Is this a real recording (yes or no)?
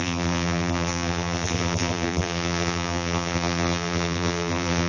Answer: no